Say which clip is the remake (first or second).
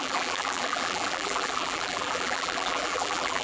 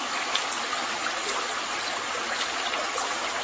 first